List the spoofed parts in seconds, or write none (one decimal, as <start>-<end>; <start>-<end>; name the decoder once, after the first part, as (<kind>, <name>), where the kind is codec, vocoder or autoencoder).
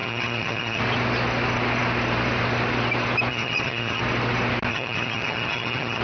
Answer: 0.0-0.8 (vocoder, HiFi-GAN); 3.3-4.0; 4.7-6.0